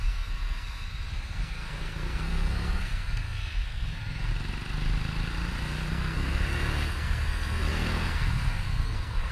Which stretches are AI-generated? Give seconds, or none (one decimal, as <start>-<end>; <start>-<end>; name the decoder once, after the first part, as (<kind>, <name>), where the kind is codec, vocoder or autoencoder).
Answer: 0.0-4.3 (codec, SNAC); 5.9-9.3